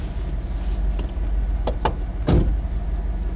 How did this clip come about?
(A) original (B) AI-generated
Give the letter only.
A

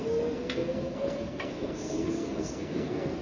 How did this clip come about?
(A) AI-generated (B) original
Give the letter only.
A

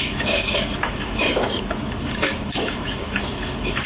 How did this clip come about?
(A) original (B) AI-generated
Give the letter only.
B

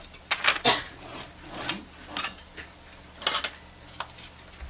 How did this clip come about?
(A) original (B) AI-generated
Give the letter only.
A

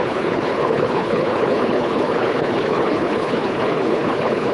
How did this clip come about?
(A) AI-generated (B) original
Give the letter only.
A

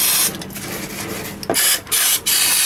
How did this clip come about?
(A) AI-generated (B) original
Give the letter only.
B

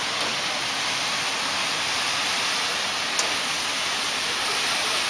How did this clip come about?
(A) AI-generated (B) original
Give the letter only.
B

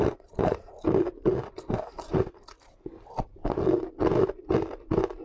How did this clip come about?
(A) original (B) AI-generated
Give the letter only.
A